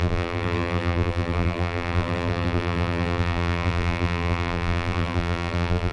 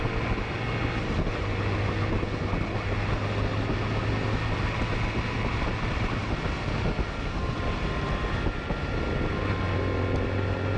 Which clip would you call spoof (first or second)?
first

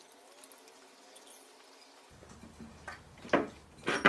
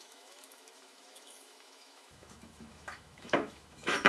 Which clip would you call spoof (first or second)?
second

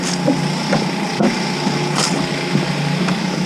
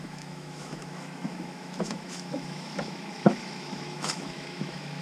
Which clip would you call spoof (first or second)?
second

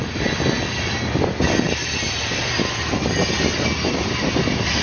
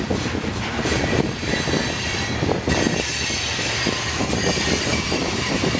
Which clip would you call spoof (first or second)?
second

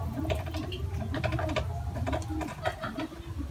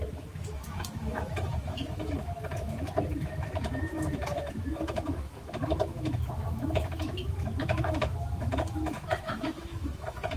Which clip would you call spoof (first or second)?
second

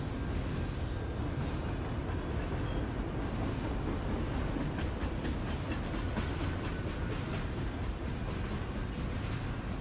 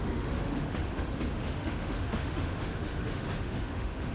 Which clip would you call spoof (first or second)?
second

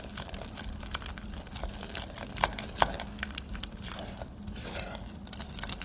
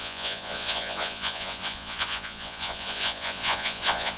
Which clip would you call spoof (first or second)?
second